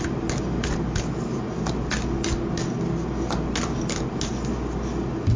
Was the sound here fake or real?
real